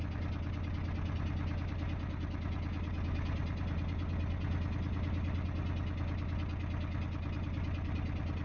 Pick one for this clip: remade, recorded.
recorded